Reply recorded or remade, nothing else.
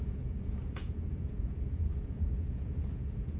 remade